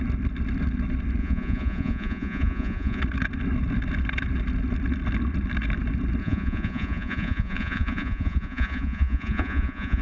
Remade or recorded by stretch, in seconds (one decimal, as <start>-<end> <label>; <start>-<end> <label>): 0.0-1.2 recorded; 1.2-3.0 remade; 3.0-6.2 recorded; 6.2-10.0 remade